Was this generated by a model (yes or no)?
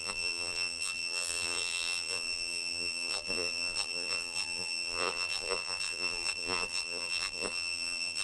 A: yes